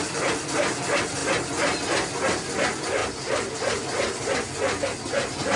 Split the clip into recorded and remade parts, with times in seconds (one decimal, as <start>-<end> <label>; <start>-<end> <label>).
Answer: 0.0-5.6 recorded